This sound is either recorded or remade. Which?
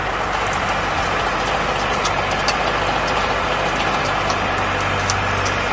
recorded